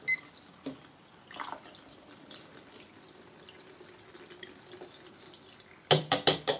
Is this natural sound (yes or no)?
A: yes